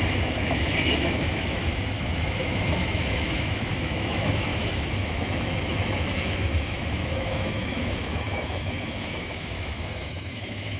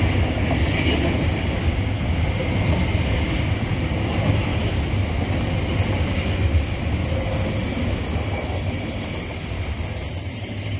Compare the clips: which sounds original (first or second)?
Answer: second